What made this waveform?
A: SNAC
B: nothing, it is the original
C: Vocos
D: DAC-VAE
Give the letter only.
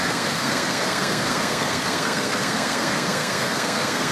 A